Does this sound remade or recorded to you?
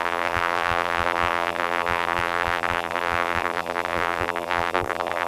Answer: remade